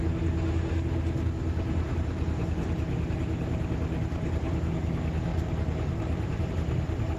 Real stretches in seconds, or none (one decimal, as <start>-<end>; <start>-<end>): 0.0-5.3; 6.5-7.2